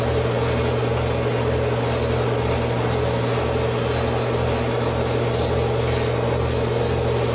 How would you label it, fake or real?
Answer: real